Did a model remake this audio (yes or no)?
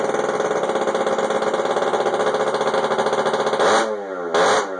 no